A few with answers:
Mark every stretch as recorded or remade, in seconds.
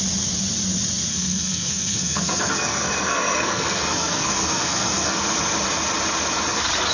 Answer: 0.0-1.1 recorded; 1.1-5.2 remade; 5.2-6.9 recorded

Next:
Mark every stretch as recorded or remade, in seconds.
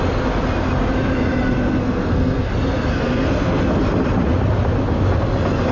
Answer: 0.0-1.8 recorded; 1.8-2.5 remade; 2.5-2.9 recorded; 2.9-3.6 remade; 3.6-5.7 recorded